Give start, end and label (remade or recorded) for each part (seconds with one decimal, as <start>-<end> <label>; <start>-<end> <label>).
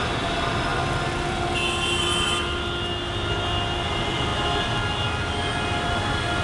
0.0-6.4 recorded